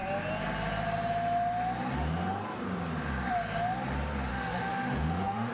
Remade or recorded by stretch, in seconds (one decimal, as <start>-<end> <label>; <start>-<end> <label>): 0.0-4.3 recorded; 4.3-5.5 remade